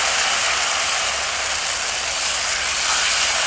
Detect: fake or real real